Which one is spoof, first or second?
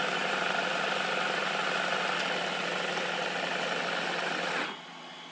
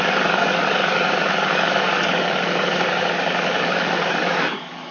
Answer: second